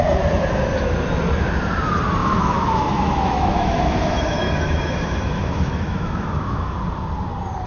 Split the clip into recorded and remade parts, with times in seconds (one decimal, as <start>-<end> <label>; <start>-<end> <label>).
0.0-2.2 recorded; 2.2-6.8 remade; 6.8-7.7 recorded